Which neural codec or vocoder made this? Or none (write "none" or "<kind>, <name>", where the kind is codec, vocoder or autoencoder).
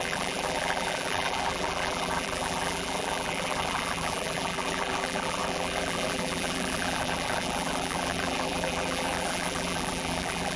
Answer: vocoder, BigVGAN v2